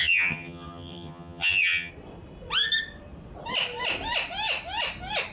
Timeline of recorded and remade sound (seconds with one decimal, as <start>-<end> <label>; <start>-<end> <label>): 0.0-1.9 remade; 1.9-5.3 recorded